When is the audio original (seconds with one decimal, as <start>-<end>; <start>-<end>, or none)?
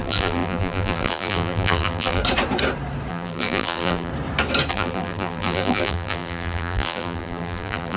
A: 2.2-3.1; 4.1-4.7